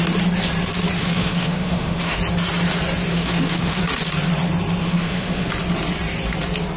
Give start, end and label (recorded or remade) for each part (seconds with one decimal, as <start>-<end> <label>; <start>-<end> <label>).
0.0-1.0 recorded; 1.0-2.2 remade; 2.2-3.1 recorded; 3.1-3.8 remade; 3.8-4.8 recorded; 4.8-5.5 remade; 5.5-6.8 recorded